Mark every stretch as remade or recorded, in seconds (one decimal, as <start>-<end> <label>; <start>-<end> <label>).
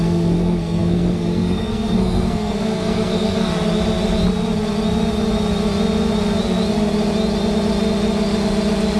0.0-3.5 remade; 3.5-9.0 recorded